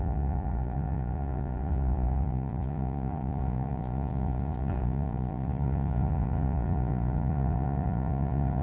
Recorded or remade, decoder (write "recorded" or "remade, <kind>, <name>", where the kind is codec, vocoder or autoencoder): remade, vocoder, Vocos